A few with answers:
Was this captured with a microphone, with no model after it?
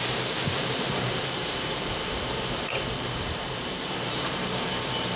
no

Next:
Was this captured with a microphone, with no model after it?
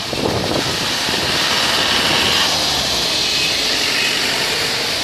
yes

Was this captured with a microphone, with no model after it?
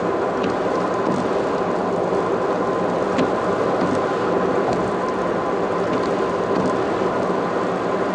yes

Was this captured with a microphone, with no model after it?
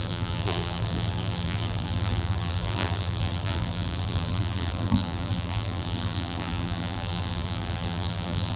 no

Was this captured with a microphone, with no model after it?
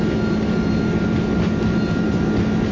yes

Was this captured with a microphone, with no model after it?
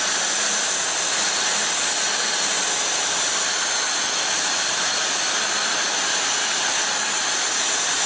yes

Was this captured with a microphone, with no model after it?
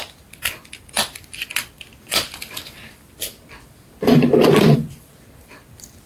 no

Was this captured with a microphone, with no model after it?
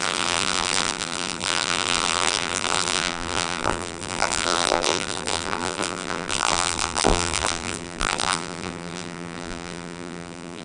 no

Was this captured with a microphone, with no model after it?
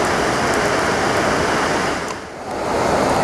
yes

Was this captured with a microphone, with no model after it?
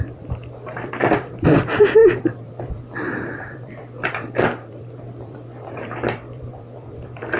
no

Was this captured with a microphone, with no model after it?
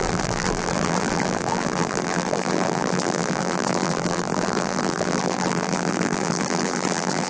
no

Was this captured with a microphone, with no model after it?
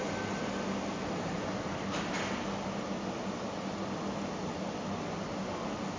yes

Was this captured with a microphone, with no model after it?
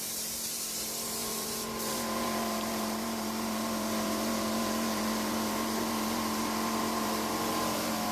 no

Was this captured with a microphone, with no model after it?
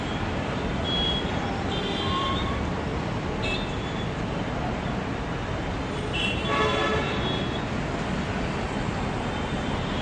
no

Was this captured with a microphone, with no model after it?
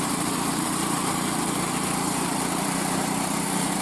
no